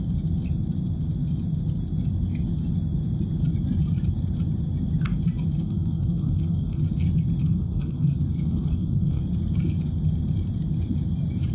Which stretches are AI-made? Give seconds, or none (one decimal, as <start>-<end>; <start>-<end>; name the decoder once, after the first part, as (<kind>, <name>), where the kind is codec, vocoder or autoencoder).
5.6-6.8 (codec, SNAC); 7.4-9.2